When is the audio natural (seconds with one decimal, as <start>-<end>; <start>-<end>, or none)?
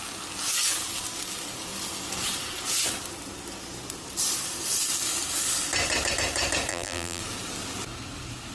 0.0-6.7; 7.2-8.5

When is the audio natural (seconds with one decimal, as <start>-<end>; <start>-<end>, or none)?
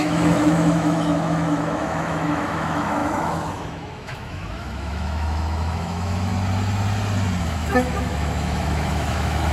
6.3-7.4